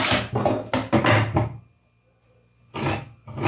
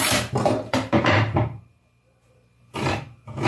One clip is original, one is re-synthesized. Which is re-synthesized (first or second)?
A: second